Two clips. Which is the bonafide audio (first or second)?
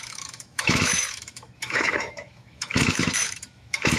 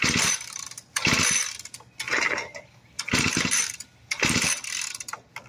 second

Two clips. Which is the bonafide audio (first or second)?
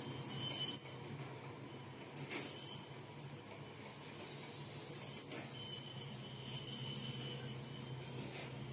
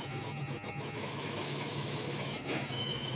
first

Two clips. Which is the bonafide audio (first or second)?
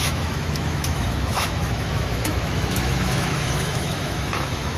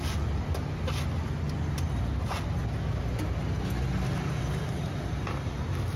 second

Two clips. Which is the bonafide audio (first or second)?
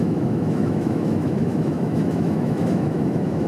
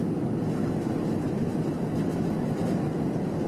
second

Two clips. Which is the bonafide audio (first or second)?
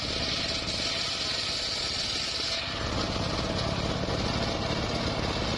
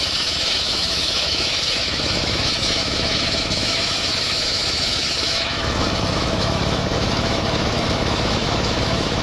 first